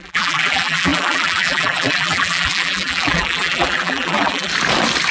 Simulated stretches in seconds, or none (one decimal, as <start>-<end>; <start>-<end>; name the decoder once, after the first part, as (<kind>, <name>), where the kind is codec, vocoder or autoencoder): 0.0-4.5 (vocoder, BigVGAN v2)